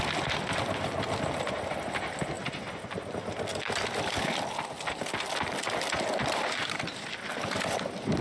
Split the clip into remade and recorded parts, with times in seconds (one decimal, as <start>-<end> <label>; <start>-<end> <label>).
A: 0.0-8.2 recorded